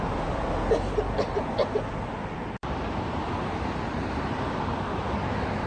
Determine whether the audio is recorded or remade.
recorded